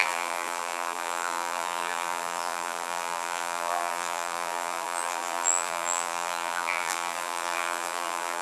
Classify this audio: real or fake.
fake